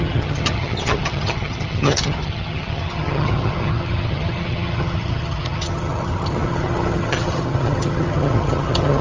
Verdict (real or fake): fake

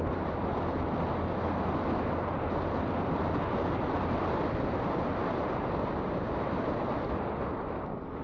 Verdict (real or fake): real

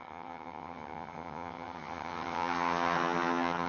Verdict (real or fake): fake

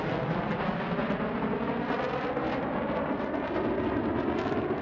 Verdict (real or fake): real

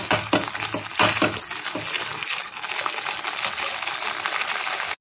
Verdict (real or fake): real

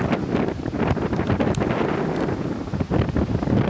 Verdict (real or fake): real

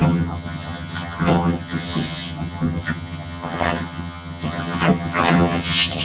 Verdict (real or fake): fake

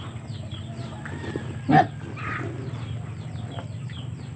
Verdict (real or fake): real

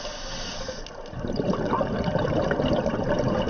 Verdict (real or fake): real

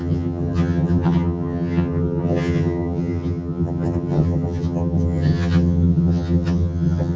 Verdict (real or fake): fake